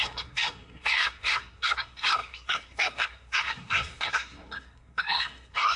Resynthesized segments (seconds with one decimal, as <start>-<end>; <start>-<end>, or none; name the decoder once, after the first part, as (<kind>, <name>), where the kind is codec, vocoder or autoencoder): 0.0-5.8 (codec, SNAC)